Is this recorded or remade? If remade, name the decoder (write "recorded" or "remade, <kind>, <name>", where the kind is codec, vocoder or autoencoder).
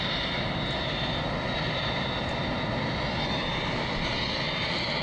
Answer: recorded